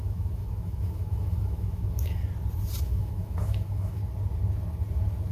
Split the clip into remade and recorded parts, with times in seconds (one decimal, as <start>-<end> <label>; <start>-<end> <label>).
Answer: 0.0-2.2 remade; 2.2-2.8 recorded; 2.8-4.0 remade; 4.0-5.3 recorded